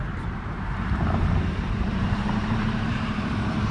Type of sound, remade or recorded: remade